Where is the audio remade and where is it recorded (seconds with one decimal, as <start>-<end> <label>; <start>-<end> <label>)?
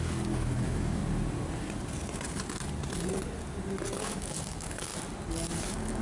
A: 0.0-1.0 remade; 1.0-4.0 recorded; 4.0-4.9 remade; 4.9-5.6 recorded; 5.6-6.0 remade